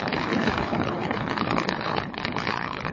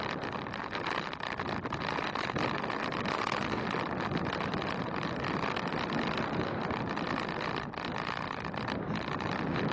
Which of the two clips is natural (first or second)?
second